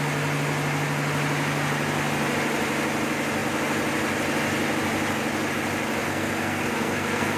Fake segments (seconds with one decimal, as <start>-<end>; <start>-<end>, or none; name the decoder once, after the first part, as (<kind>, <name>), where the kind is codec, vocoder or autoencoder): 6.0-7.4 (codec, SNAC)